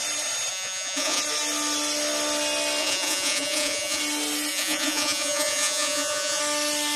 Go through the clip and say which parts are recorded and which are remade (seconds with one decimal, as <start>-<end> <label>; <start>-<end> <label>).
0.0-0.5 recorded; 0.5-1.2 remade; 1.2-2.8 recorded; 2.8-4.0 remade; 4.0-4.5 recorded; 4.5-6.4 remade; 6.4-7.0 recorded